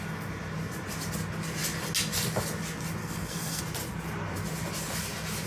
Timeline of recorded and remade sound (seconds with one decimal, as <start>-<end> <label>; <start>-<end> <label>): 0.0-3.0 recorded; 3.0-3.6 remade; 3.6-5.5 recorded